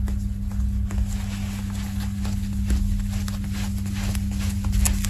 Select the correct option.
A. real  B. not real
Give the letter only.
A